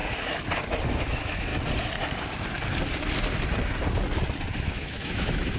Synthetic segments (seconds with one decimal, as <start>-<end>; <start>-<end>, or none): 1.0-1.5; 4.5-5.6